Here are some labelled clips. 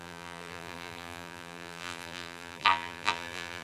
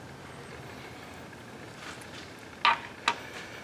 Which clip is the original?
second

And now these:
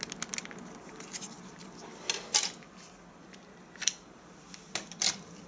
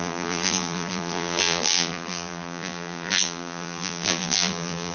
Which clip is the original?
first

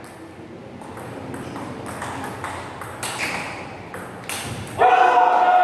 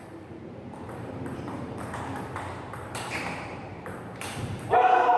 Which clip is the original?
first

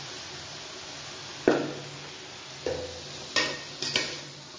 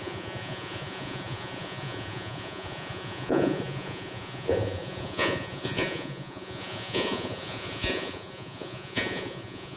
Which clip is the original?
first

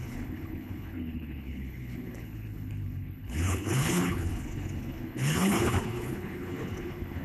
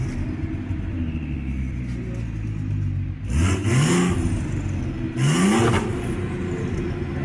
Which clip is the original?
second